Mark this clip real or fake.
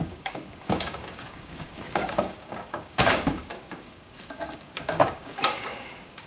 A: fake